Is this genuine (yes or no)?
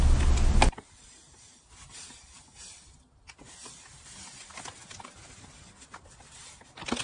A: yes